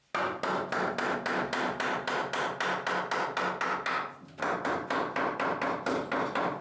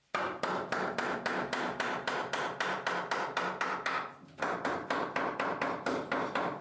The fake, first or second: second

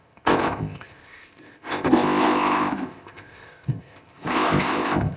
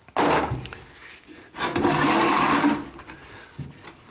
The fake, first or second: first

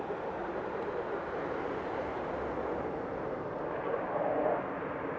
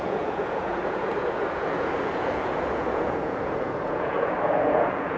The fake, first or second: second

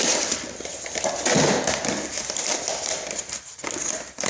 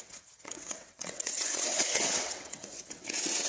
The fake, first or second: second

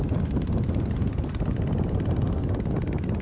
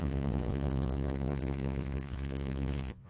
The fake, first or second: second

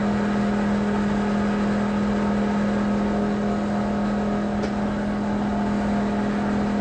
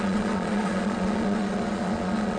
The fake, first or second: second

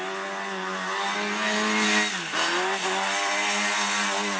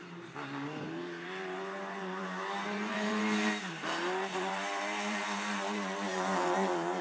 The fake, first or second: second